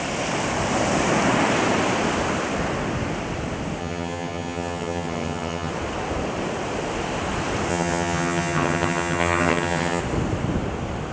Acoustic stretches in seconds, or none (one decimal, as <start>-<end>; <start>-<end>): 0.0-3.8; 5.7-7.7; 10.0-11.1

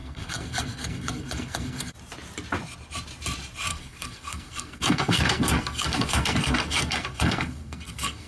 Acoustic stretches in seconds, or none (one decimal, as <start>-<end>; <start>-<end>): 1.9-3.7

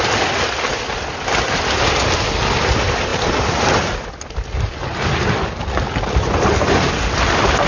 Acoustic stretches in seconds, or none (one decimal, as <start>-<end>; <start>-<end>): 0.0-7.7

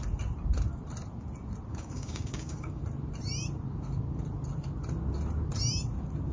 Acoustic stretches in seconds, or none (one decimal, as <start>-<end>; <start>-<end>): 0.0-1.7; 2.8-6.3

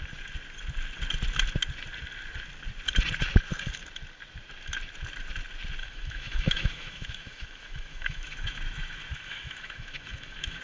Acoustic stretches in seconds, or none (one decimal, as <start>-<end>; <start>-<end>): 0.0-5.8

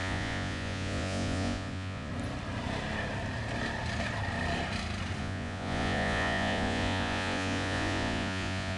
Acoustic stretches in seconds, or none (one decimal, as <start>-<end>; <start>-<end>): 2.1-5.2

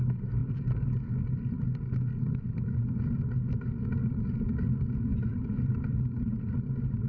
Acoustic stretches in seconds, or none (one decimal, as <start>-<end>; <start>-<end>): 0.0-5.1; 6.5-7.1